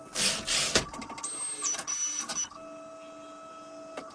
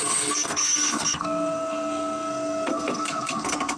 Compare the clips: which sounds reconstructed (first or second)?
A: second